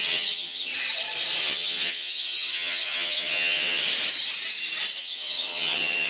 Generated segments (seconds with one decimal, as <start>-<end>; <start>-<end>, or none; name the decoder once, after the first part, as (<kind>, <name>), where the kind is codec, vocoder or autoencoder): 0.0-0.7 (vocoder, HiFi-GAN); 1.4-3.8; 5.0-6.1